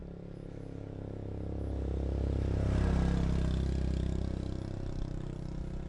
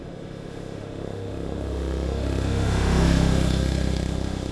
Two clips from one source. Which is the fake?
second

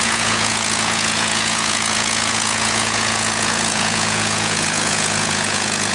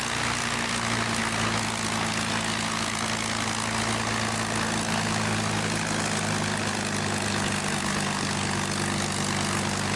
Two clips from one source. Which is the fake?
first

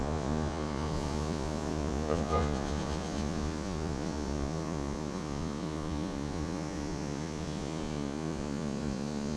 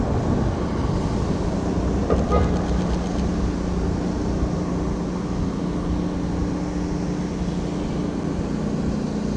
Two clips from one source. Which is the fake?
first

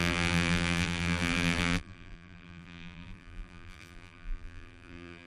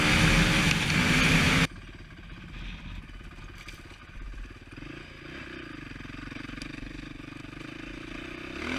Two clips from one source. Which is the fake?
first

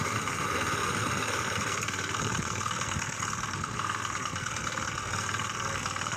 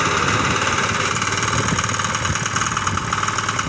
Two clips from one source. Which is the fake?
first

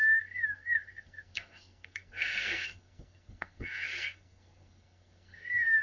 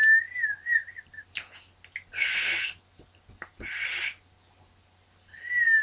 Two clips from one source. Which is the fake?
first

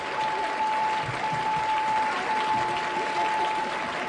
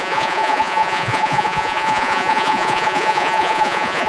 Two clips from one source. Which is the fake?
second